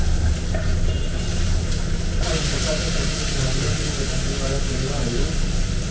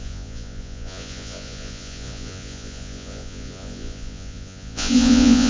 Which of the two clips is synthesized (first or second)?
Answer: second